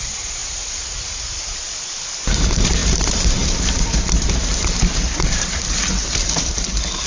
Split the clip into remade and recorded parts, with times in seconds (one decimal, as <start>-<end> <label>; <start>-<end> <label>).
0.0-0.4 remade; 0.4-1.1 recorded; 1.1-7.1 remade